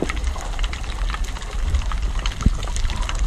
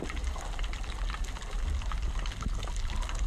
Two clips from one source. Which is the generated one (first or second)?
first